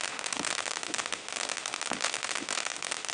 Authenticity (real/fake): fake